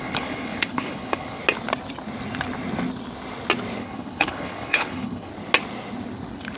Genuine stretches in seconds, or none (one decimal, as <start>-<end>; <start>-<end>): 1.4-3.8; 5.3-6.6